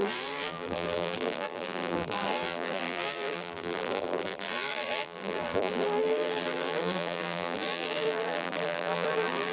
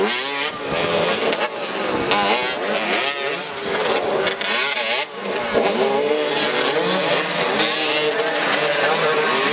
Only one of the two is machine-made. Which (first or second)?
first